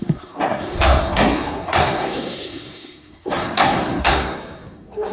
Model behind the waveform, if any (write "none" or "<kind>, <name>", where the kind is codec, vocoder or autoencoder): codec, SNAC